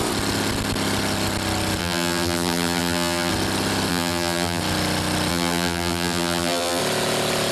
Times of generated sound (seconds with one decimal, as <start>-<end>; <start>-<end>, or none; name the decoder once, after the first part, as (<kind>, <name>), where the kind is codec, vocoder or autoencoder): 1.8-3.3 (vocoder, BigVGAN v2); 3.9-4.6; 5.3-6.8